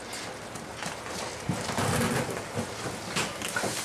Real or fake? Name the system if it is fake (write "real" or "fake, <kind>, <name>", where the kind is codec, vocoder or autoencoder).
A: real